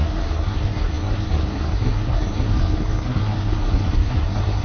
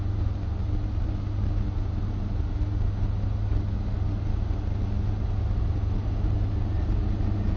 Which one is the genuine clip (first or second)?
second